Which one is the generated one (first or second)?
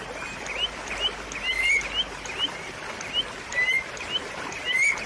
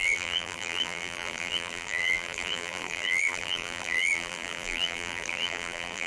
second